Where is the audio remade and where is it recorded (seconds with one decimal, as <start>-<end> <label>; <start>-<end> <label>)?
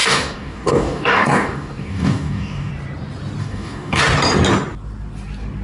0.0-2.7 remade; 2.7-3.4 recorded; 3.4-4.0 remade; 4.0-5.6 recorded